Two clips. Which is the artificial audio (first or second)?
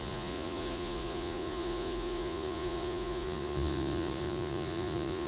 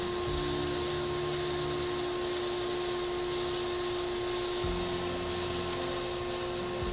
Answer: first